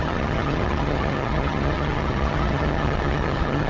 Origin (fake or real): fake